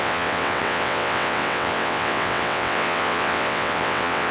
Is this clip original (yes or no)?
no